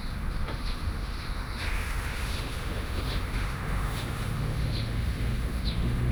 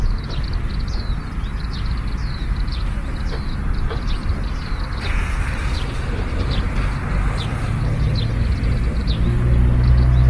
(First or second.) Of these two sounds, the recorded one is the second